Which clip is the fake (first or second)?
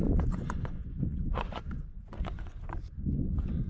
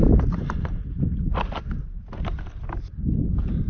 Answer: first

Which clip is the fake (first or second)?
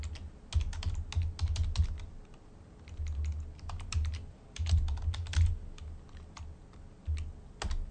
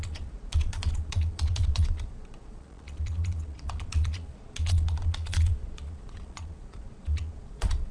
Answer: second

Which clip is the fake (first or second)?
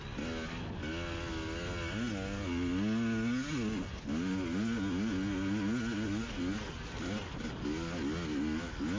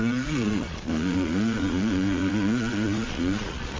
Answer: second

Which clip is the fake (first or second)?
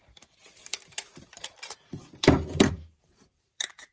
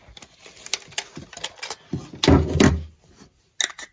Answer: first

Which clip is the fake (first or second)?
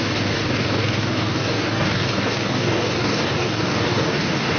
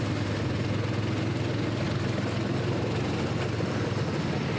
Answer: first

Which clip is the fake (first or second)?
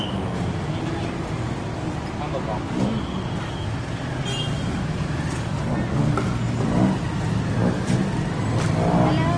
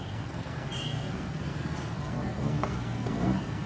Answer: second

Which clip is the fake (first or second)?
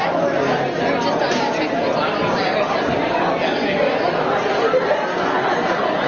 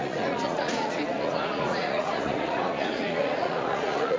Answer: second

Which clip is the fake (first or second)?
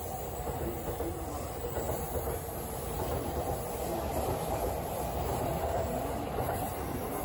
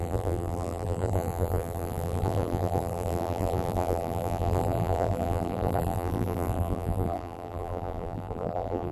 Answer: second